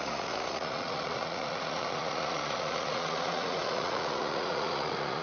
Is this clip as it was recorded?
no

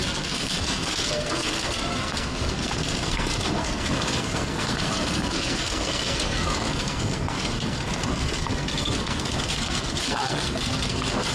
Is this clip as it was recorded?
no